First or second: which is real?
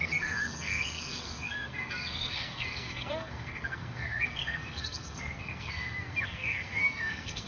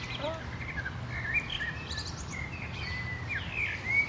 second